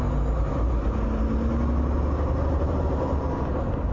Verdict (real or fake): real